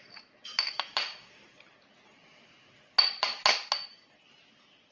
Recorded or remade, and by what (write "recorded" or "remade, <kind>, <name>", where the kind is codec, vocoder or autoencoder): recorded